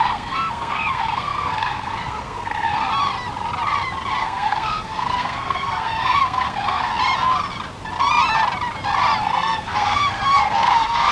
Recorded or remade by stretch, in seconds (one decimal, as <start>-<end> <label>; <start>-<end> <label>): 0.0-2.9 remade; 2.9-4.2 recorded; 4.2-6.9 remade; 6.9-9.2 recorded; 9.2-11.1 remade